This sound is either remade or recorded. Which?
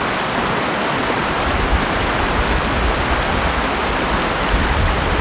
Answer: recorded